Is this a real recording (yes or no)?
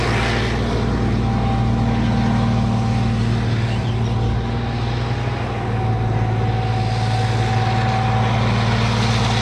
yes